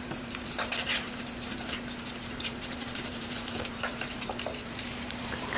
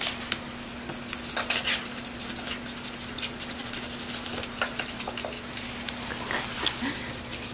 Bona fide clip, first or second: second